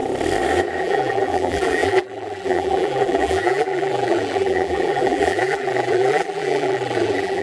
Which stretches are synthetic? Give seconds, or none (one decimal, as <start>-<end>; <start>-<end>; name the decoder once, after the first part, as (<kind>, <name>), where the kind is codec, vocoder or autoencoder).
0.8-7.4 (vocoder, BigVGAN v2)